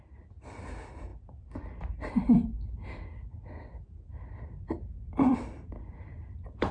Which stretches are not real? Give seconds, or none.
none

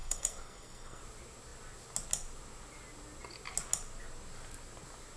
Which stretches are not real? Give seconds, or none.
0.0-1.0 (codec, SNAC)

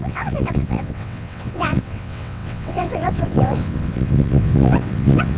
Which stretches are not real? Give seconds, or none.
0.0-5.4 (vocoder, WaveNeXt)

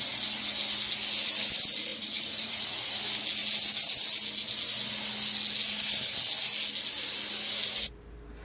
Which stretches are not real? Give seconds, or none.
1.9-2.9 (vocoder, Vocos)

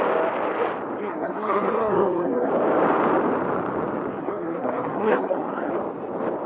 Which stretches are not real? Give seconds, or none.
1.0-2.5 (codec, SNAC); 4.2-5.7

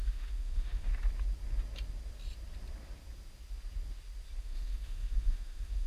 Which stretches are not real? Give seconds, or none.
0.0-0.9 (autoencoder, DAC-VAE); 4.4-5.9

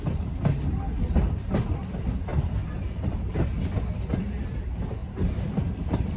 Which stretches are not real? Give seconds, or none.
2.3-3.3 (vocoder, BigVGAN v2); 5.0-6.2

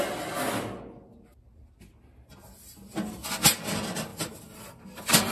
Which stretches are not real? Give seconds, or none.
4.1-4.8 (vocoder, BigVGAN v2)